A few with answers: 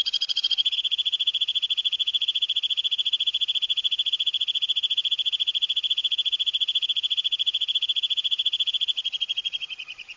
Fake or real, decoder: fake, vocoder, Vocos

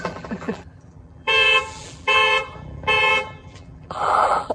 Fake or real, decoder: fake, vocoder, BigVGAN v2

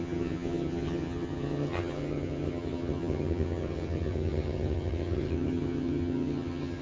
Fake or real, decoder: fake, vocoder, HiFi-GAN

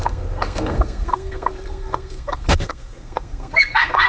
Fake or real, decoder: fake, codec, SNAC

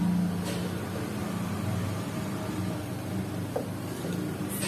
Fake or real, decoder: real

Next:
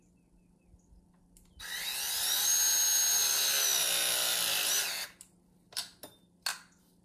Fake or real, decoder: real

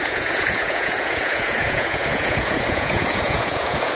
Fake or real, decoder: fake, vocoder, Vocos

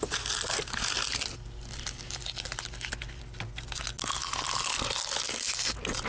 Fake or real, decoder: real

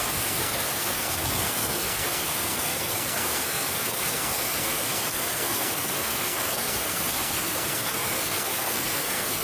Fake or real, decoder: fake, codec, SNAC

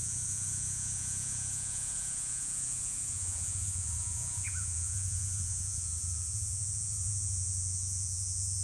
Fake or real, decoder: fake, vocoder, Vocos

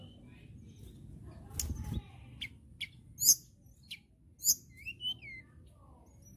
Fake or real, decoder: real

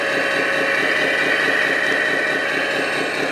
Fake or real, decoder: real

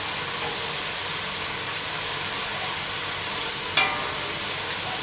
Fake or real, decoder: real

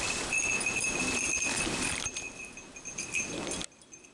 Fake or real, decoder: real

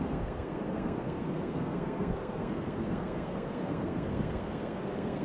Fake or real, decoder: fake, codec, SNAC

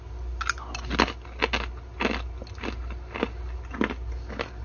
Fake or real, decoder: real